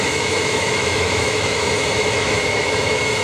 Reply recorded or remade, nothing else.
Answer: remade